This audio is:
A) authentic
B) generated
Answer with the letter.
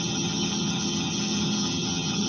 B